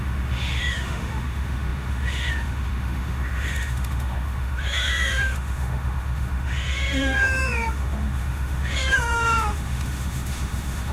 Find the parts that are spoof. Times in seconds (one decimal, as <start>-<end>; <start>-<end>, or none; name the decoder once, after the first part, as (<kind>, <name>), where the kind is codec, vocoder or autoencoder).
0.0-10.9 (autoencoder, DAC-VAE)